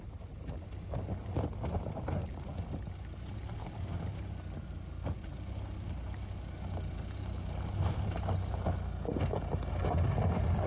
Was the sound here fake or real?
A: real